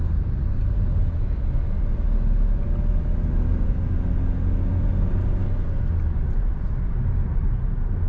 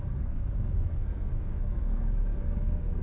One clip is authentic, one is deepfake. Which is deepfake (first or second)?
second